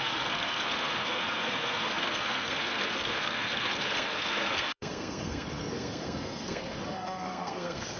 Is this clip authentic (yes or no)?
no